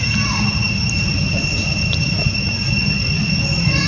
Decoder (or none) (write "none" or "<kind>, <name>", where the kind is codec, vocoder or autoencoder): none